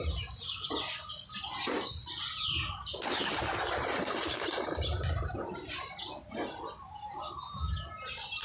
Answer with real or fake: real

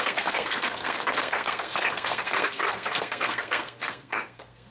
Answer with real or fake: fake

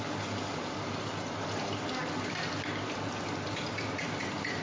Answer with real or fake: real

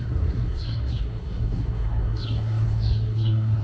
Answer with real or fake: fake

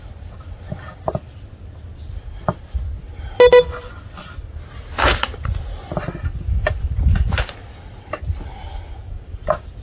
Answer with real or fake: real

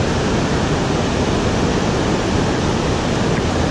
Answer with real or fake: real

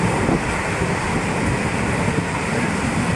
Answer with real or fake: real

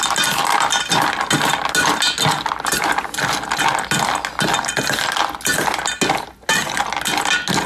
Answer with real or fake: real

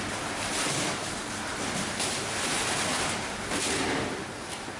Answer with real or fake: real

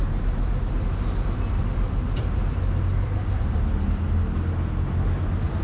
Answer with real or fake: real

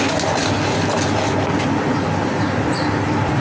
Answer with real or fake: real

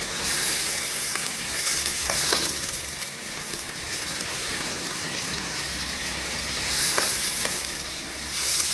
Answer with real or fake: fake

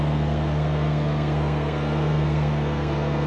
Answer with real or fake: fake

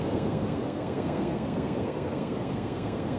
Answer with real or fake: fake